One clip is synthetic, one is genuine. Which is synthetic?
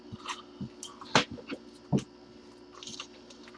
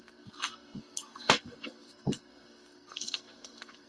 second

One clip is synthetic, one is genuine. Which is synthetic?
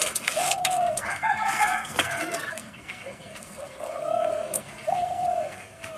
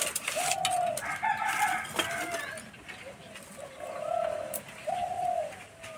first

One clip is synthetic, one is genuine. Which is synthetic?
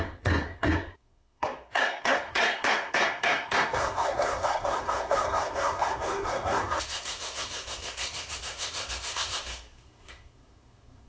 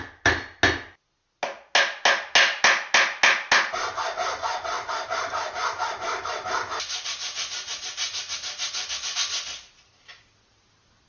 first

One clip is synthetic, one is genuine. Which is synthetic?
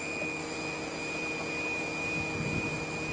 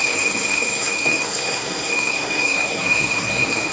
second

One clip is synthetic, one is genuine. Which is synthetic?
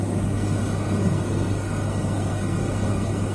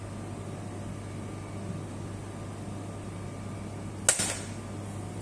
first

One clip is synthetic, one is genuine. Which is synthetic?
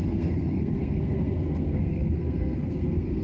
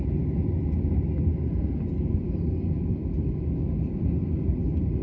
first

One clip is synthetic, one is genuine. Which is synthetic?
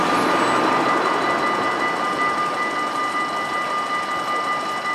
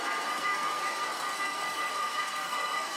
second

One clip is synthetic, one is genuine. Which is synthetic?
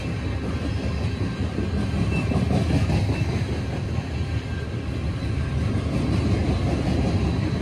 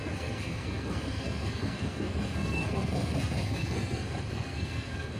second